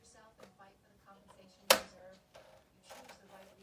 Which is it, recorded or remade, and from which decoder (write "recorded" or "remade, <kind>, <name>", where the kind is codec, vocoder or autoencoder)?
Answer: recorded